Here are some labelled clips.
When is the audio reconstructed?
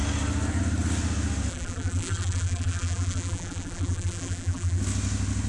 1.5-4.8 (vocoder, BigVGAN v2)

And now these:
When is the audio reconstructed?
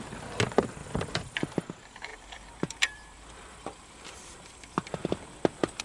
0.8-1.6 (vocoder, BigVGAN v2); 2.1-5.8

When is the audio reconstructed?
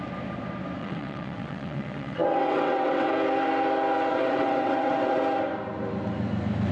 0.8-3.1 (vocoder, WaveNeXt); 4.1-5.2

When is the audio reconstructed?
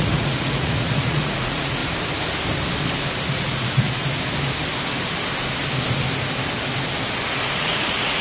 0.0-1.8 (vocoder, Vocos); 3.3-4.0; 7.5-8.2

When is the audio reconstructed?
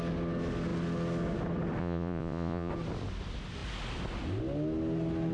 1.8-2.7 (vocoder, Vocos)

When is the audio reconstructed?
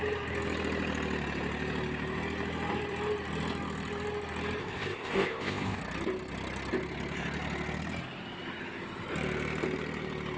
4.6-5.8 (codec, ZipCodec)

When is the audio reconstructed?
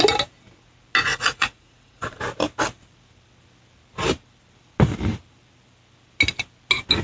1.1-2.2 (vocoder, Vocos)